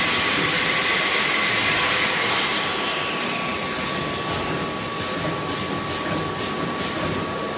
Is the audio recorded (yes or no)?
yes